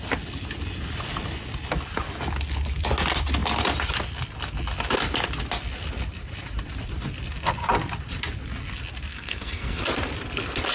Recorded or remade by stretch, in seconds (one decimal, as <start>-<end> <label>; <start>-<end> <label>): 0.0-9.1 recorded; 9.1-9.8 remade; 9.8-10.7 recorded